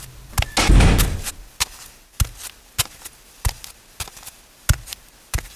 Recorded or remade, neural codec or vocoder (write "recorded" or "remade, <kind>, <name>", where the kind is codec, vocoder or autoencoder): recorded